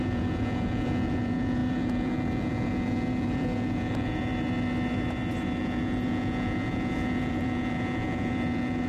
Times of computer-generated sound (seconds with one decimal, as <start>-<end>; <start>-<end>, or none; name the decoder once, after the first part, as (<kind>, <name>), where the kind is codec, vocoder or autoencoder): 0.0-4.3 (vocoder, Vocos); 5.6-8.9